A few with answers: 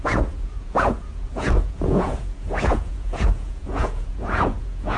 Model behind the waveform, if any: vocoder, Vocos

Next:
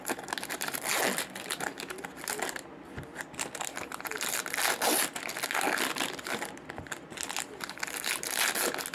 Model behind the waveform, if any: none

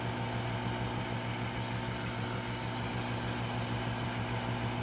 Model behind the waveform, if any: none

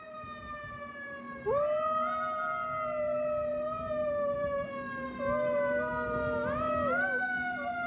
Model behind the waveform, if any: none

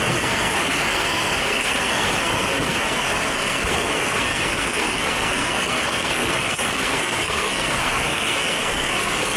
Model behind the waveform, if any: codec, SNAC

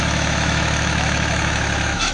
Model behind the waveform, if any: autoencoder, DAC-VAE